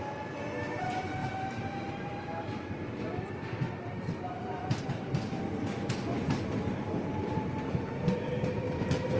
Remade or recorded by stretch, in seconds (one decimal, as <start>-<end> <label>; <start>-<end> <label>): 0.0-1.2 recorded; 1.2-2.9 remade; 2.9-7.2 recorded; 7.2-8.6 remade; 8.6-9.2 recorded